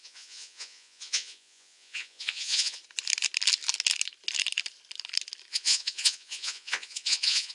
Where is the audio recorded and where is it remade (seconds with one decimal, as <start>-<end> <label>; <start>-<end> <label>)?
0.0-2.8 remade; 2.8-5.5 recorded; 5.5-7.5 remade